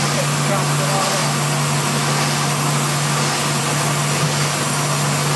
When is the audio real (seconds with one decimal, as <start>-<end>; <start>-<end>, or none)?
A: 0.0-5.4